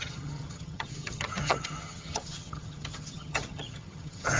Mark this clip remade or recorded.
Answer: remade